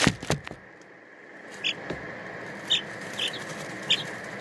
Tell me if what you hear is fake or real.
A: real